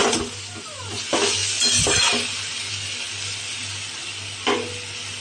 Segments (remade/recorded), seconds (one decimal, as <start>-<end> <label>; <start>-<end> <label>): 0.0-5.2 recorded